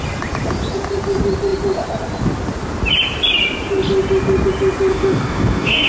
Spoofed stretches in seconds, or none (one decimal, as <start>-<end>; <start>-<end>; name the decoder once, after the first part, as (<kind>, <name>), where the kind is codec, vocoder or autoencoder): 4.9-5.9 (codec, DAC)